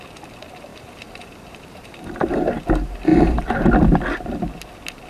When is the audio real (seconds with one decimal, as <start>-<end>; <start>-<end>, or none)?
0.0-0.7; 2.3-3.1; 3.7-5.1

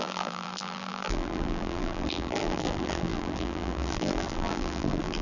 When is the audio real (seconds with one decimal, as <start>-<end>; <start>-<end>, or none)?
none

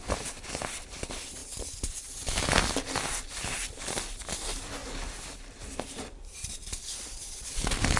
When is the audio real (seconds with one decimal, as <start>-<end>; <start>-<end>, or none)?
none

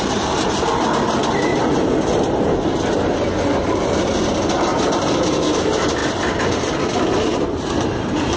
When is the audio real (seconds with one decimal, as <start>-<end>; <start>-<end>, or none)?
0.0-1.5; 3.7-4.7; 5.3-8.4

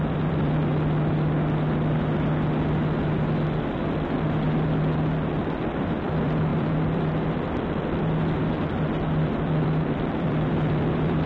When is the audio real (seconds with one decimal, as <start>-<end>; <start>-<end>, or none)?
0.7-5.6